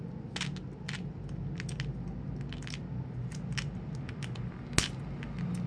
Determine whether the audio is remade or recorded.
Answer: recorded